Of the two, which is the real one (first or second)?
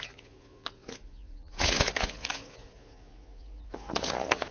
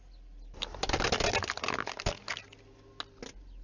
second